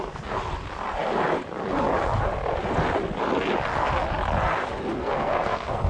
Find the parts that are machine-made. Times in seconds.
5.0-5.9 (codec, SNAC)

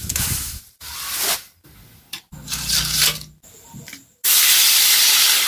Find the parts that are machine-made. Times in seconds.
0.0-0.6 (autoencoder, DAC-VAE)

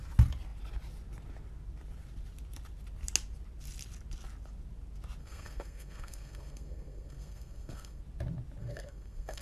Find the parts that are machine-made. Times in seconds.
5.2-8.0 (codec, SNAC); 8.6-9.4

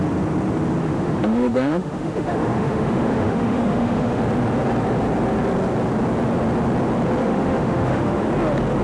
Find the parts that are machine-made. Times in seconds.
0.8-4.2 (autoencoder, DAC-VAE); 7.2-8.3

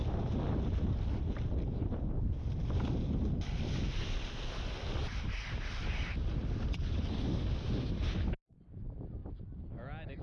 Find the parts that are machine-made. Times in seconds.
1.3-9.2 (vocoder, BigVGAN v2)

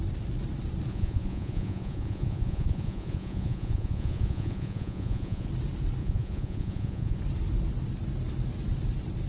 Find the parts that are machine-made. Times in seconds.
0.9-5.5 (vocoder, Vocos); 6.0-7.2

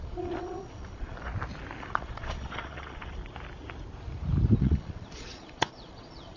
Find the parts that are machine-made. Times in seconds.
0.0-1.3 (vocoder, Vocos); 1.8-3.2; 4.6-6.4

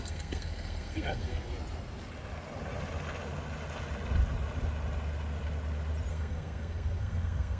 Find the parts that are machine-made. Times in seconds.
0.0-1.5 (codec, SNAC); 6.1-7.6